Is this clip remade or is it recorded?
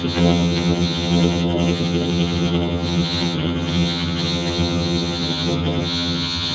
remade